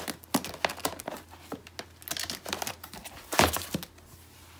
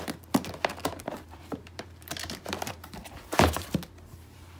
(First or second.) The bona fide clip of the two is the first